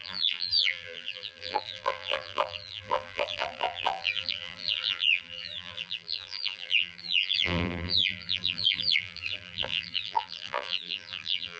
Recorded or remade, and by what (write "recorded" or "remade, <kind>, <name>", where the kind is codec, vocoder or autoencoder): remade, vocoder, BigVGAN v2